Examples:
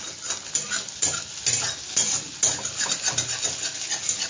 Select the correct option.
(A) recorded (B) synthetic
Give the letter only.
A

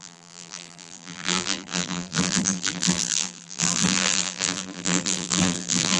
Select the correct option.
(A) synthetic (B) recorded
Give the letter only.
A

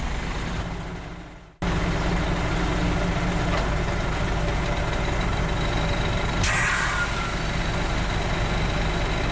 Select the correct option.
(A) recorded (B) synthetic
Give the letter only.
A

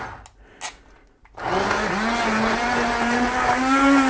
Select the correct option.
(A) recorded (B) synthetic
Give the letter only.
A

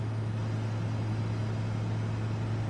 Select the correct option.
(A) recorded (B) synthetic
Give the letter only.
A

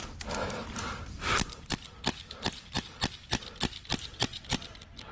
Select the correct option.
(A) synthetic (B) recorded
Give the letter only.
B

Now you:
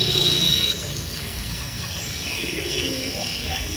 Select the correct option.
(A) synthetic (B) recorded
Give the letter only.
A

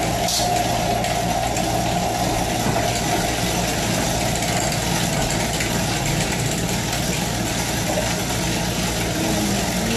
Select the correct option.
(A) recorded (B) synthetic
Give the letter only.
A